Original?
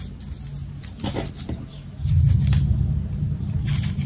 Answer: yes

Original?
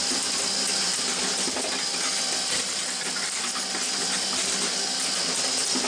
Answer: yes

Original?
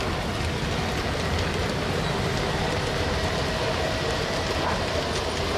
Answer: yes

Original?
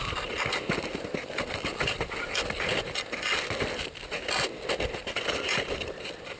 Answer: yes